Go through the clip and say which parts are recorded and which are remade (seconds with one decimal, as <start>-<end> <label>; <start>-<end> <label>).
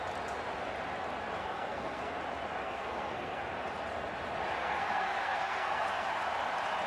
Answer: 0.0-1.4 recorded; 1.4-2.2 remade; 2.2-2.6 recorded; 2.6-3.4 remade; 3.4-4.6 recorded; 4.6-6.1 remade; 6.1-6.9 recorded